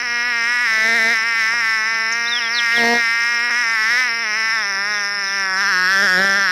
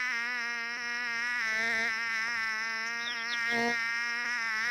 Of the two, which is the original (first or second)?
first